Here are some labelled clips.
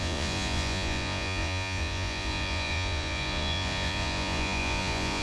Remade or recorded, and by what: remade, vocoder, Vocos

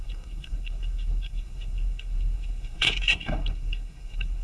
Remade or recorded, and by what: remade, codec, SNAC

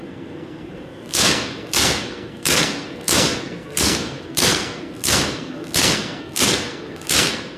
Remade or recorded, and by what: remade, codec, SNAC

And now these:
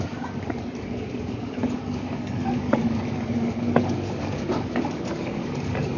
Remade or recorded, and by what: remade, codec, DAC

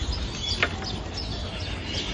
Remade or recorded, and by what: recorded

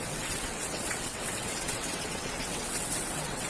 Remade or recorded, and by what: remade, vocoder, WaveNeXt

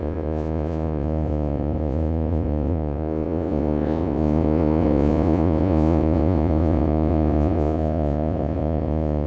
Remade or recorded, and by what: remade, vocoder, Vocos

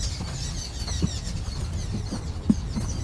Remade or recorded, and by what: recorded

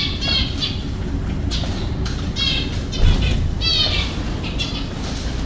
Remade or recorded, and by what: recorded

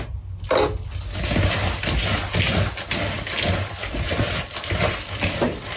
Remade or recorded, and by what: recorded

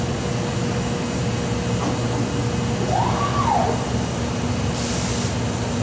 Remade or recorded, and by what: recorded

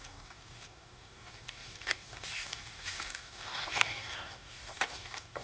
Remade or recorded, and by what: remade, codec, DAC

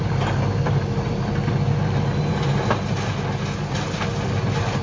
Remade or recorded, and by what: recorded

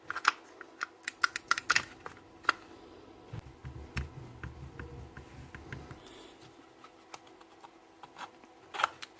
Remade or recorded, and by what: recorded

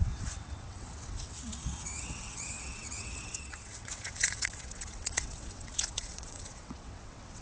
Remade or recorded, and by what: remade, vocoder, WaveNeXt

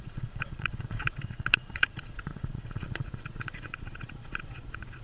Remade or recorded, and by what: remade, vocoder, Vocos